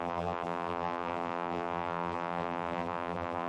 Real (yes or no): no